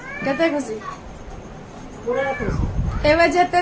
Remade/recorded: recorded